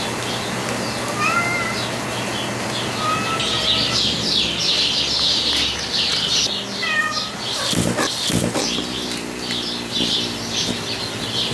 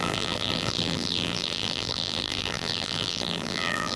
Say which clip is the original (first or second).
first